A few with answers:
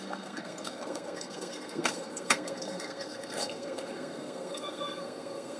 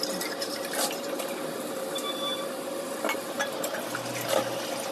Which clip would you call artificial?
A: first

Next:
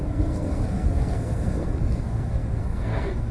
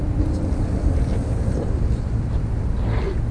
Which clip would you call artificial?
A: first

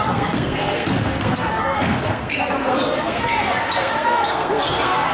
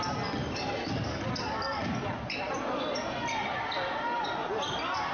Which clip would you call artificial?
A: first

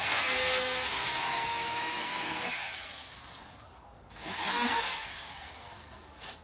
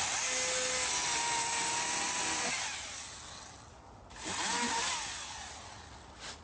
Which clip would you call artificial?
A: first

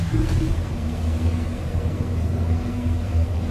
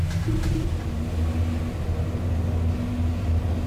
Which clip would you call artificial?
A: first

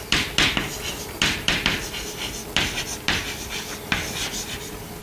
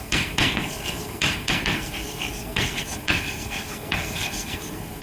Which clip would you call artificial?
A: second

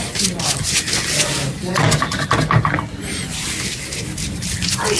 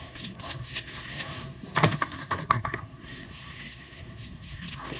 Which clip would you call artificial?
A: second